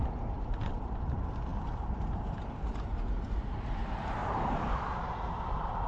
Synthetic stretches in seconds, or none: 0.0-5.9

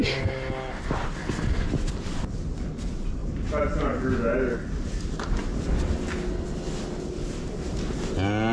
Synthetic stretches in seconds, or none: 3.2-4.1

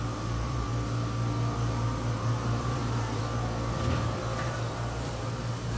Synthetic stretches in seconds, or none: 0.0-0.7; 1.7-3.2; 3.7-5.8

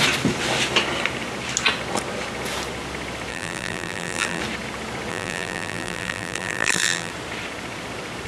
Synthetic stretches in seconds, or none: 3.3-4.4; 5.1-7.1

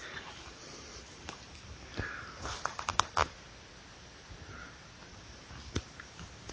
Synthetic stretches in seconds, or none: 0.0-3.1; 5.1-5.8

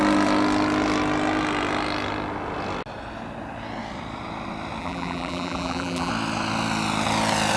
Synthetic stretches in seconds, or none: 4.8-6.1

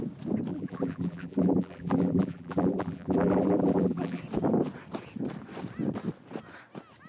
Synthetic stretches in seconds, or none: 0.5-4.2